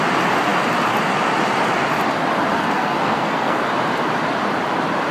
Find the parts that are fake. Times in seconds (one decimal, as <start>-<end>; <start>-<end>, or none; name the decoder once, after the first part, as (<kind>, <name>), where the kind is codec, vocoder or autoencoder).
2.5-3.6 (codec, SNAC)